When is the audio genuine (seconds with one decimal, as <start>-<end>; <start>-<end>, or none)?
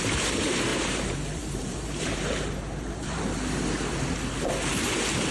0.0-0.7; 3.2-5.3